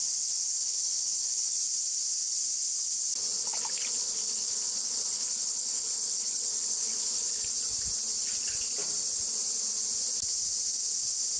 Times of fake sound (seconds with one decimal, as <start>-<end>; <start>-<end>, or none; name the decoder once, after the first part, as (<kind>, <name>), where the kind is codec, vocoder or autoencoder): 0.0-1.6 (codec, HILCodec); 3.4-7.4

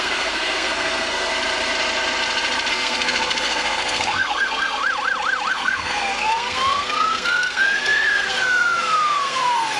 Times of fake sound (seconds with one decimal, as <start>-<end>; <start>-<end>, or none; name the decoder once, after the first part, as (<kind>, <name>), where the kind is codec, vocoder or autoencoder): 0.0-1.3 (codec, SNAC); 2.7-4.8; 5.5-9.8

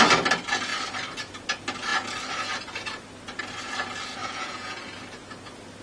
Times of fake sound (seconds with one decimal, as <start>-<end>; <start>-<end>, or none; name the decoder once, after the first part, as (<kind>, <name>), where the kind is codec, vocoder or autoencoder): 4.2-4.8 (vocoder, Vocos)

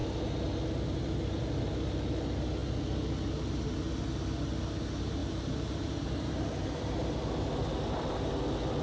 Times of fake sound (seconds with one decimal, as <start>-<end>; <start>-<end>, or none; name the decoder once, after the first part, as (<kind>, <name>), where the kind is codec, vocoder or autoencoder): 5.2-7.1 (vocoder, BigVGAN v2)

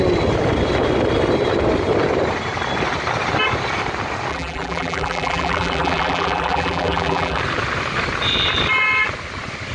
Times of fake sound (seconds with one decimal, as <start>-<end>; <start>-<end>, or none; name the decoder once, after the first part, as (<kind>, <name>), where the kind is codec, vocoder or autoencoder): 4.3-7.4 (vocoder, BigVGAN v2)

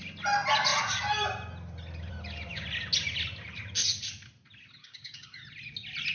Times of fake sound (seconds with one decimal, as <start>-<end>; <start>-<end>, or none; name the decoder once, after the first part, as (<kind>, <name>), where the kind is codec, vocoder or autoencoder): 4.8-5.4 (codec, DAC)

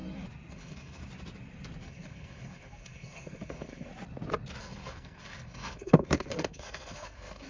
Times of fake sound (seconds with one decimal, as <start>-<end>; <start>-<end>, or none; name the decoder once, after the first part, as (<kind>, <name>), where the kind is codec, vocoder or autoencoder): 0.5-1.0 (codec, SNAC); 1.8-3.9; 4.6-7.5

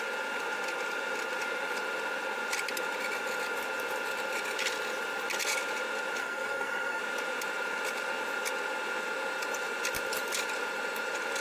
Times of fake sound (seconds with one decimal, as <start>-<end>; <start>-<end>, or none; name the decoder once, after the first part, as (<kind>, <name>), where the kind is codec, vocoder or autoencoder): 6.2-7.0 (codec, SNAC)